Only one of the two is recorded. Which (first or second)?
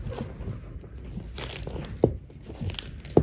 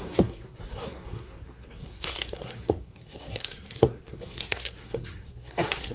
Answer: first